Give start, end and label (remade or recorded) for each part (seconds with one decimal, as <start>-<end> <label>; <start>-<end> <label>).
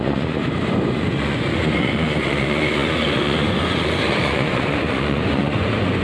0.0-0.4 remade; 0.4-0.9 recorded; 0.9-6.0 remade